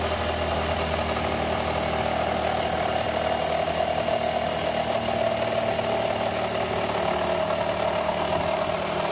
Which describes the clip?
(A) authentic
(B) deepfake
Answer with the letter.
A